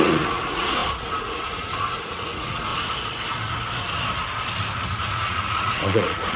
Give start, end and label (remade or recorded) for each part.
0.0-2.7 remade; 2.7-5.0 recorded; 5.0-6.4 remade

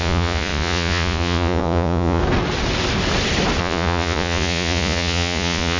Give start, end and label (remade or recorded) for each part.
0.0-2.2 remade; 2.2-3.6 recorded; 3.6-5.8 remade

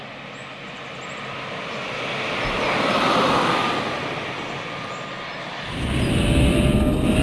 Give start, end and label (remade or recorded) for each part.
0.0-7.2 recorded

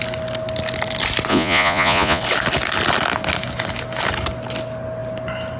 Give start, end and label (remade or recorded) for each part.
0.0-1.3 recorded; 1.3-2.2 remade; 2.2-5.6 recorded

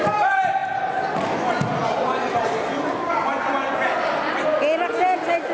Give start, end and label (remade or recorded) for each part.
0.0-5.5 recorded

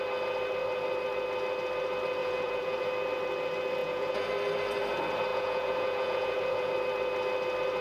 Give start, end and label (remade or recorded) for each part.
0.0-2.2 recorded; 2.2-2.9 remade; 2.9-3.8 recorded; 3.8-4.3 remade; 4.3-5.3 recorded; 5.3-6.7 remade; 6.7-7.8 recorded

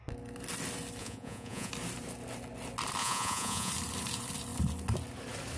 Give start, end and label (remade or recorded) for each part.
0.0-1.0 recorded; 1.0-1.7 remade; 1.7-3.0 recorded; 3.0-3.7 remade; 3.7-5.6 recorded